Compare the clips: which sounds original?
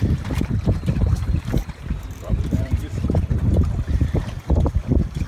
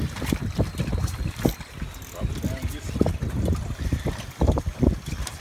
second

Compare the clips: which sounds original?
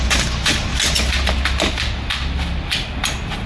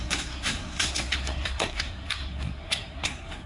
first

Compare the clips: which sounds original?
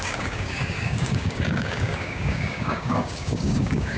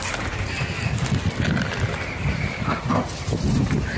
second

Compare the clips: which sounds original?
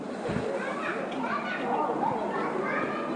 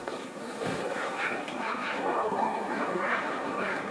first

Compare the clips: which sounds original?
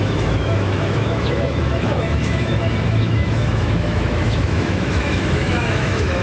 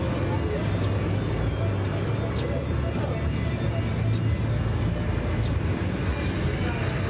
second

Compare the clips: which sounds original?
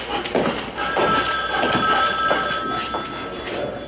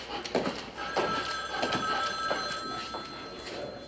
first